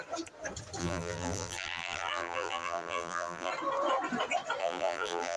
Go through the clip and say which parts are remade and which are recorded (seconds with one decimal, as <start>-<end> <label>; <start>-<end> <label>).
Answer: 0.0-0.8 recorded; 0.8-3.5 remade; 3.5-4.6 recorded; 4.6-5.4 remade